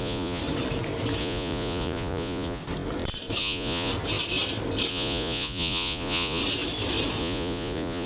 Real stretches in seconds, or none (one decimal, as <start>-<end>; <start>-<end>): 0.4-1.2; 2.6-3.4; 3.9-4.9; 6.4-7.2